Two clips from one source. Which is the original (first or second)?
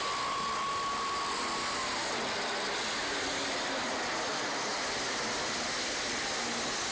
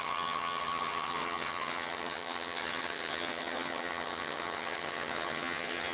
first